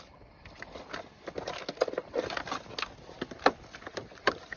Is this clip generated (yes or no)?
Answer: no